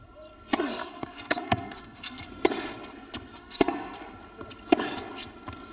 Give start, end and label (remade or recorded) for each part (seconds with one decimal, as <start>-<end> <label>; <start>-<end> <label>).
0.0-0.8 recorded; 0.8-2.3 remade; 2.3-3.4 recorded; 3.4-4.0 remade; 4.0-5.7 recorded